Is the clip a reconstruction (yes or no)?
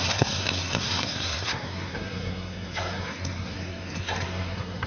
yes